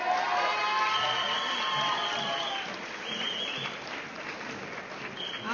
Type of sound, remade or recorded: recorded